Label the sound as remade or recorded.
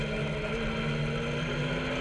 recorded